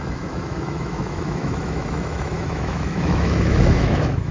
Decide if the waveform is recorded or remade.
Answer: remade